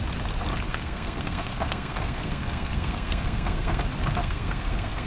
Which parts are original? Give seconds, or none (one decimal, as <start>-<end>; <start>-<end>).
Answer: 0.0-0.7; 3.8-4.2